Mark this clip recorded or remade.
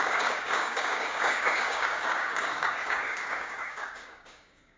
remade